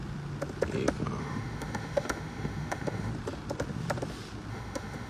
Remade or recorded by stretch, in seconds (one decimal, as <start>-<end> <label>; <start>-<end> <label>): 0.0-1.2 recorded; 1.2-3.1 remade; 3.1-4.5 recorded; 4.5-5.1 remade